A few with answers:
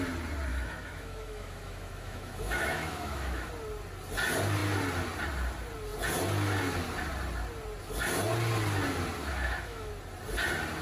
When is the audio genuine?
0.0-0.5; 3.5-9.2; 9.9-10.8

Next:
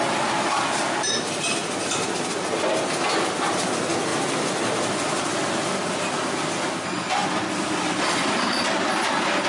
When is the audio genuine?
0.0-9.5

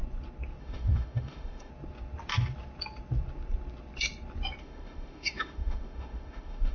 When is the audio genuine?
0.0-0.6; 1.7-4.6

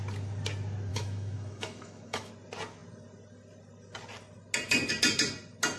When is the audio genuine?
0.0-0.9; 2.3-5.8